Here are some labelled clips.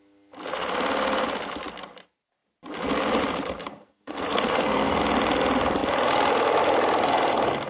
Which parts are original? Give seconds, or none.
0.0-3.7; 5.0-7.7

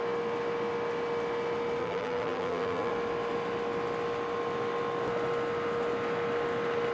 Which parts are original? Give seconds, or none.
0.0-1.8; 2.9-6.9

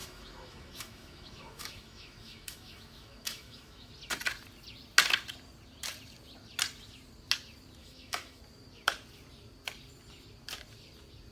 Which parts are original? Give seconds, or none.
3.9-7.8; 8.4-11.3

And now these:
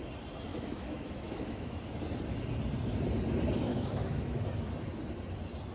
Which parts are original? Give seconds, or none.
0.0-0.5; 1.8-3.7; 4.4-5.7

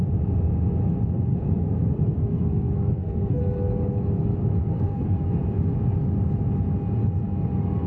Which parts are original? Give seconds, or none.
0.0-1.3; 3.4-4.6; 5.4-7.9